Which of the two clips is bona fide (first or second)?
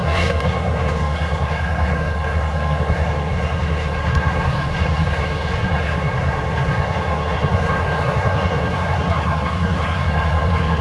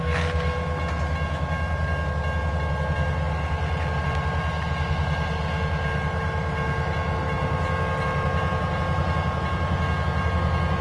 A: second